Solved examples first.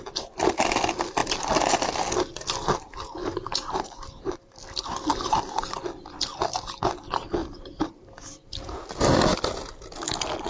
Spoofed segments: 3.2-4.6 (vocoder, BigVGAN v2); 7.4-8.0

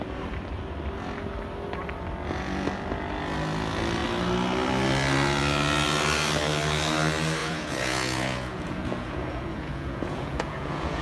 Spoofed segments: 7.4-11.0 (vocoder, Vocos)

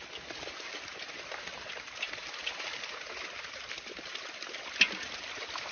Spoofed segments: none

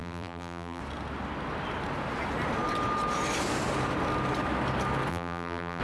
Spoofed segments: 0.0-0.8 (vocoder, BigVGAN v2); 5.1-5.8

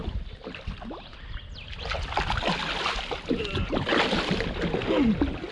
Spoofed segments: none

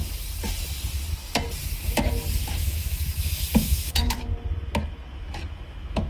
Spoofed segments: 2.6-4.2 (autoencoder, DAC-VAE); 5.1-6.1

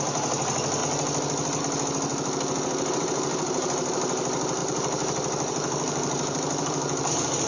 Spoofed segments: 4.6-7.1 (vocoder, BigVGAN v2)

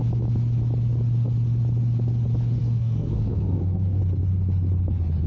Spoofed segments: 2.6-4.0 (codec, SNAC)